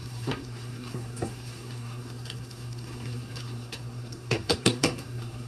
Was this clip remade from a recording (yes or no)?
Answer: yes